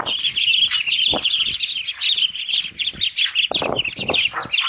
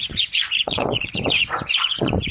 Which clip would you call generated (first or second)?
second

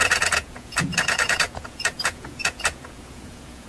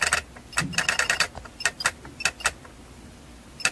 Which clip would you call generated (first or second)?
first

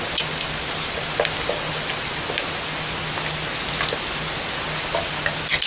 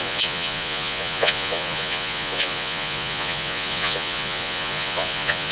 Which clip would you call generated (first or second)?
second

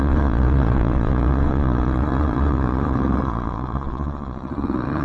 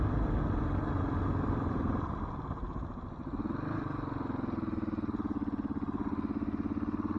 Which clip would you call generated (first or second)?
first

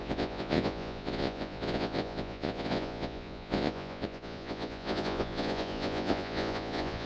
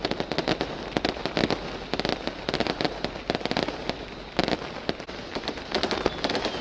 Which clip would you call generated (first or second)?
first